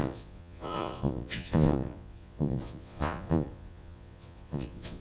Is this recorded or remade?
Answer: remade